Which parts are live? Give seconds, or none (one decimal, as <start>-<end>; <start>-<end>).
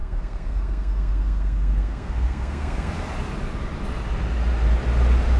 2.9-5.4